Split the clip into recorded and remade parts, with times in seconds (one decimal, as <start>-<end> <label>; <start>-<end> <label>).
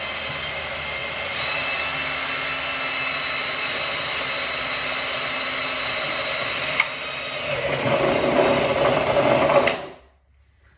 0.0-1.0 recorded; 1.0-1.7 remade; 1.7-10.8 recorded